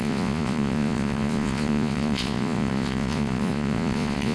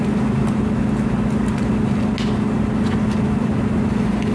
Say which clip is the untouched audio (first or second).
second